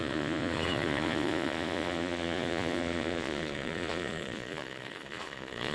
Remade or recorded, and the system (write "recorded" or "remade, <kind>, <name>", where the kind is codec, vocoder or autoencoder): remade, vocoder, Vocos